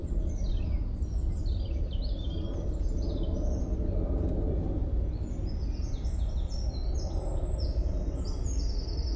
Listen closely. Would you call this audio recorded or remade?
recorded